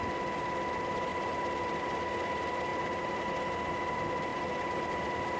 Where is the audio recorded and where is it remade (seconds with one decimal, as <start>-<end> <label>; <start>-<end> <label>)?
0.0-2.7 recorded; 2.7-3.3 remade; 3.3-4.3 recorded; 4.3-4.9 remade; 4.9-5.4 recorded